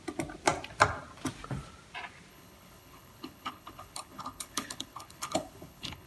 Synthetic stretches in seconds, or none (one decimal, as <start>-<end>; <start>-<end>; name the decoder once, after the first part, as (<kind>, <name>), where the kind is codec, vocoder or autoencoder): 2.3-6.1 (codec, HILCodec)